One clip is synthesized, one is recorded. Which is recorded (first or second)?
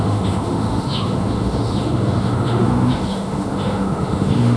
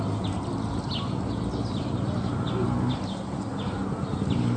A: second